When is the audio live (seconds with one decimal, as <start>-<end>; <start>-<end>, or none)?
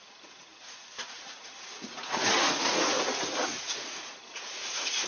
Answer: none